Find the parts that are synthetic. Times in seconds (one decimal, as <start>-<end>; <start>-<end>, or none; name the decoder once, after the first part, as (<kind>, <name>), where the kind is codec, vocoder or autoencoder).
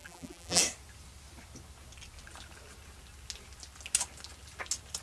0.0-0.6 (vocoder, BigVGAN v2)